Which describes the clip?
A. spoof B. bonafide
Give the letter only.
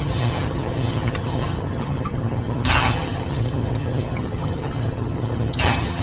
A